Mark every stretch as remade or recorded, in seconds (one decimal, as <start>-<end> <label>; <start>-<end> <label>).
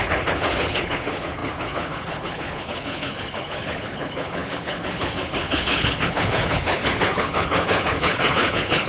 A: 0.0-8.9 remade